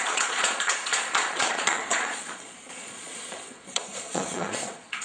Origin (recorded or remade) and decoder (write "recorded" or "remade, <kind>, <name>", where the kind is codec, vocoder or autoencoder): remade, vocoder, Vocos